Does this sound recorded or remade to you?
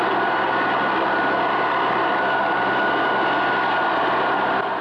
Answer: recorded